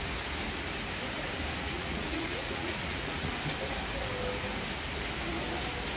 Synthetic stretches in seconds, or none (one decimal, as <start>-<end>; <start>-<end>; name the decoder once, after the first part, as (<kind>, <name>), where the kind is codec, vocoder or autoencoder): 1.6-3.3 (vocoder, Vocos)